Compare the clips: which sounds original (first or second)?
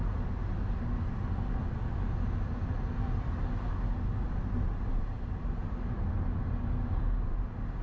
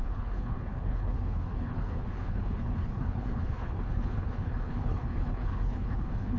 first